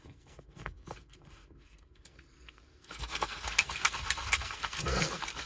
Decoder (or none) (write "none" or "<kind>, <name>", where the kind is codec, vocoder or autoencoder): codec, SNAC